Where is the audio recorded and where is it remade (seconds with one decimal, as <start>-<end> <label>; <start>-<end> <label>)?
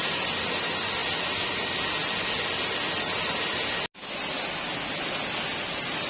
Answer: 0.0-6.1 recorded